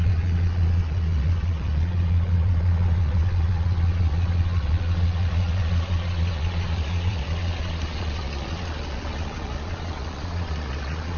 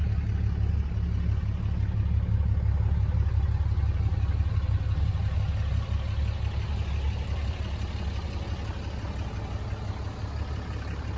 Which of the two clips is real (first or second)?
second